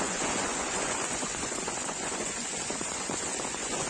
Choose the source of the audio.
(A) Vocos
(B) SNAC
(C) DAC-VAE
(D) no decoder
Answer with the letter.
A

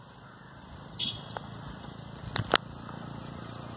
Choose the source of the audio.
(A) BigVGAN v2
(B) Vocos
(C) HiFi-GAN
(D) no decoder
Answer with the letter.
D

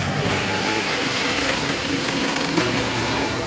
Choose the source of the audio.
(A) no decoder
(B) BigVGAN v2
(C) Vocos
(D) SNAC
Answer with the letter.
D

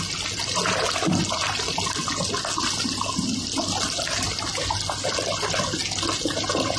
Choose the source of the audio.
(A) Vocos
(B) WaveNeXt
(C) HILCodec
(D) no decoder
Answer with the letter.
D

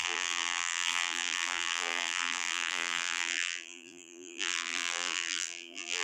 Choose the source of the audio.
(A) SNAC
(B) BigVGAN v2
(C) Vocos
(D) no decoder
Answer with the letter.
B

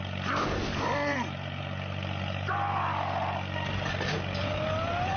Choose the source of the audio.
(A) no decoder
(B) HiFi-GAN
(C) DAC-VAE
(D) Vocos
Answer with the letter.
A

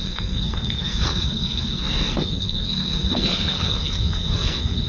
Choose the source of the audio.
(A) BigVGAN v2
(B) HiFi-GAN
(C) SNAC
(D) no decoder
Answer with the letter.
C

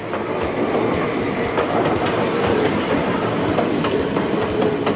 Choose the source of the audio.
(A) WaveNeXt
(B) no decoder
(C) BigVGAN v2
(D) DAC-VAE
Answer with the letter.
B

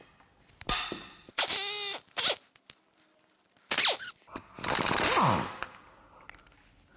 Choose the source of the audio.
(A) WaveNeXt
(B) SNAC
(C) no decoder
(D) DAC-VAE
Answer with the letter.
C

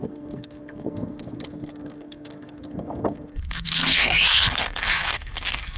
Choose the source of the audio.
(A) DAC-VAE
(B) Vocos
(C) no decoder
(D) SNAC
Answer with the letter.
D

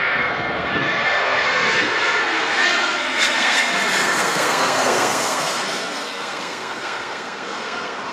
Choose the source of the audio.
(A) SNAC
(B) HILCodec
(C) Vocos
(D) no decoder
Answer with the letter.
A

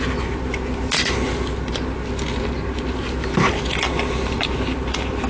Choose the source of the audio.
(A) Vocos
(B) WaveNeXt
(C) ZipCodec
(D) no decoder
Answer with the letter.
D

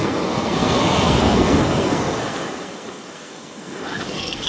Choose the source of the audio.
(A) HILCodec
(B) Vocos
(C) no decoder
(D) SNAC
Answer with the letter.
D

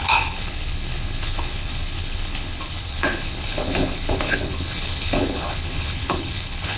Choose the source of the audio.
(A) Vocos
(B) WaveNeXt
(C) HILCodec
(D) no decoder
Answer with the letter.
C